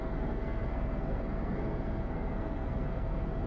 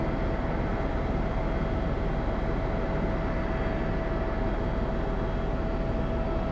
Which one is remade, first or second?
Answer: first